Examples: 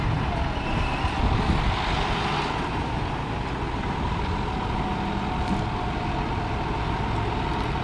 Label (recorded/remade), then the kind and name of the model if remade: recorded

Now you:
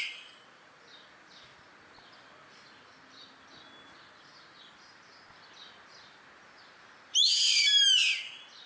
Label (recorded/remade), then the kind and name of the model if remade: recorded